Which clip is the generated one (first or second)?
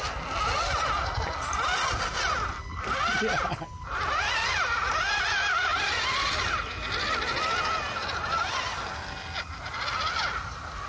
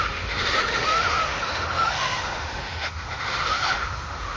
second